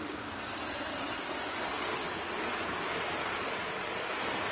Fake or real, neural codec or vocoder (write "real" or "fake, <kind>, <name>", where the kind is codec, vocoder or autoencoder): real